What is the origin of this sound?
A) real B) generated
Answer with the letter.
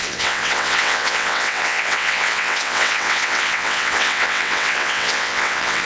B